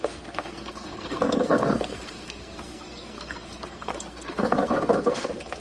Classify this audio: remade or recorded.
remade